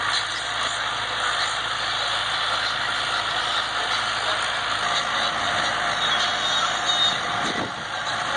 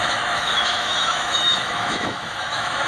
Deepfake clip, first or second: second